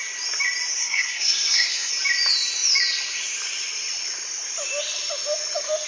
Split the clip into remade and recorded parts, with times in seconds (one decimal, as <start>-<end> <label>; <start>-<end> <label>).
0.0-0.8 recorded; 0.8-1.9 remade; 1.9-5.9 recorded